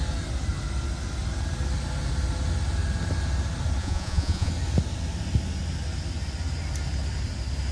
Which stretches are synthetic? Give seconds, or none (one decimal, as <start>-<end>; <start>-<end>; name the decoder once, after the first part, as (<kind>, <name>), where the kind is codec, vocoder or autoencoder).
3.8-4.5 (vocoder, Vocos)